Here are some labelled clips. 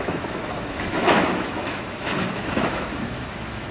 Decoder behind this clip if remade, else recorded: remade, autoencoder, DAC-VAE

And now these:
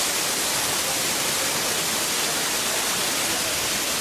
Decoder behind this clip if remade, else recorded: recorded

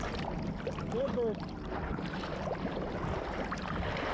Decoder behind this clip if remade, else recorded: recorded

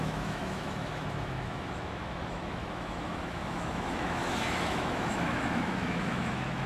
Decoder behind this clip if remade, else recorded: remade, autoencoder, DAC-VAE